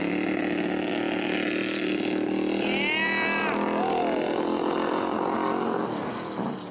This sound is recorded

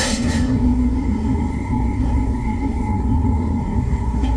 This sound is remade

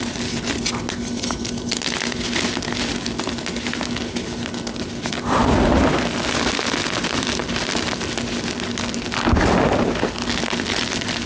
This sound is recorded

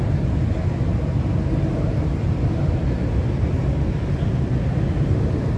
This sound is recorded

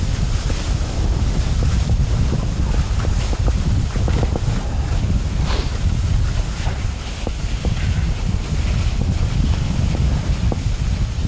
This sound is recorded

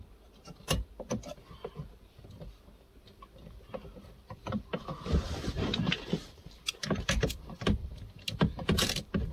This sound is remade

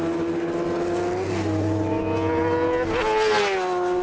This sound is recorded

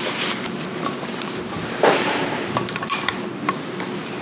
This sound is remade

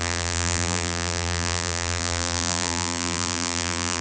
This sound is remade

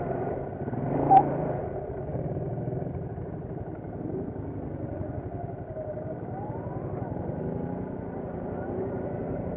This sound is recorded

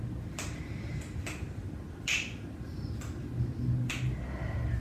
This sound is recorded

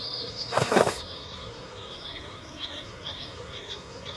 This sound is remade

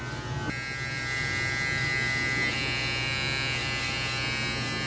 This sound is recorded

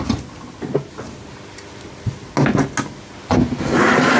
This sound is recorded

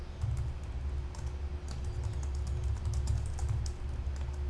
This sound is recorded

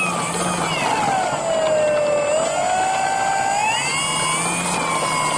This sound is recorded